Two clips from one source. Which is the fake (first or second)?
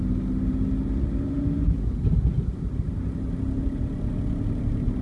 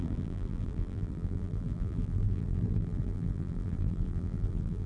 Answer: second